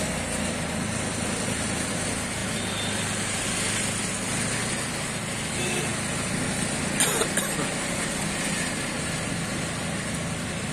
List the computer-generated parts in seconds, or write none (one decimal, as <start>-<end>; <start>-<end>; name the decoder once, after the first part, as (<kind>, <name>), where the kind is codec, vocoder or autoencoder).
none